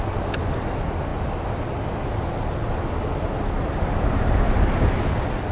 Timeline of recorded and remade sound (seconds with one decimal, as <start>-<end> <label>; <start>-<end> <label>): 0.0-5.5 recorded